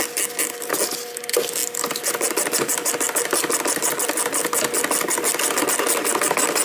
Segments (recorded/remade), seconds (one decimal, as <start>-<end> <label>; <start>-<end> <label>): 0.0-6.6 recorded